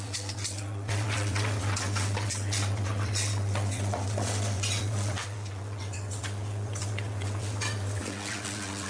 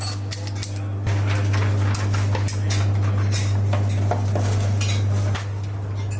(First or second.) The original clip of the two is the second